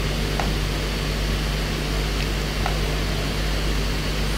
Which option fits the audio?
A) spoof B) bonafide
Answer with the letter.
B